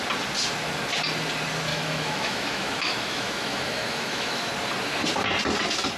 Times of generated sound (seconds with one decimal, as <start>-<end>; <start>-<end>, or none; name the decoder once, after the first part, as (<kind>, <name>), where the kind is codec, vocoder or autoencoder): 1.7-4.5 (autoencoder, DAC-VAE)